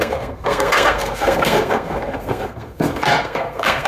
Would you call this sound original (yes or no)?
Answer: no